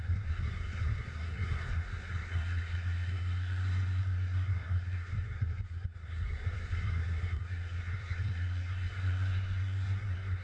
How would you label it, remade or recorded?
remade